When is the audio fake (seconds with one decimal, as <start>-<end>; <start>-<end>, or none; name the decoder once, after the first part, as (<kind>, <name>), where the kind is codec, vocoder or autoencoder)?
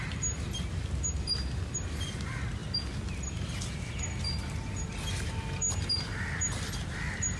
none